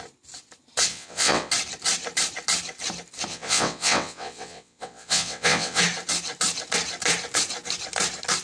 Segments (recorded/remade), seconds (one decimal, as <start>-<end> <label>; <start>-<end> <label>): 0.0-0.9 recorded; 0.9-1.5 remade; 1.5-3.3 recorded; 3.3-5.8 remade; 5.8-8.4 recorded

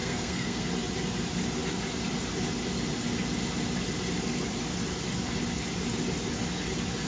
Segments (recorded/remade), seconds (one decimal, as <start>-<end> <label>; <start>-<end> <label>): 0.0-0.7 remade; 0.7-7.1 recorded

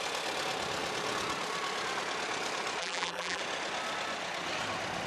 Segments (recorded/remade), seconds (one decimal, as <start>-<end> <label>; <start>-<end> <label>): 0.0-2.8 recorded; 2.8-3.4 remade; 3.4-5.1 recorded

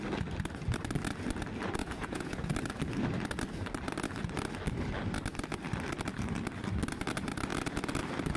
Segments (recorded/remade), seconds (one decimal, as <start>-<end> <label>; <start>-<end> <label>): 0.0-1.8 recorded; 1.8-2.5 remade; 2.5-8.4 recorded

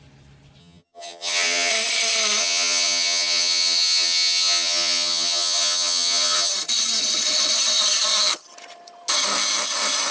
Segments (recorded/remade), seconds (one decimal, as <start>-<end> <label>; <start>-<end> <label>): 0.0-0.6 recorded; 0.6-1.7 remade; 1.7-2.4 recorded; 2.4-6.5 remade; 6.5-10.1 recorded

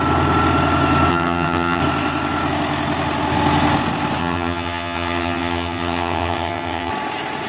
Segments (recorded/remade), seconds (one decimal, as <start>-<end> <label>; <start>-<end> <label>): 0.0-1.1 recorded; 1.1-1.8 remade; 1.8-4.2 recorded; 4.2-6.9 remade; 6.9-7.5 recorded